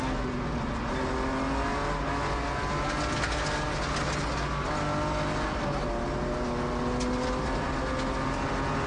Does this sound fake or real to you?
real